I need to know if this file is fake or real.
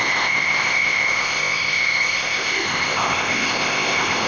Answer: fake